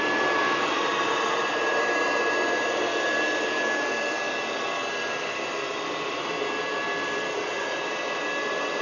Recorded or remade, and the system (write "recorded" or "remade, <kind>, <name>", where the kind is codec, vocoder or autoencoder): recorded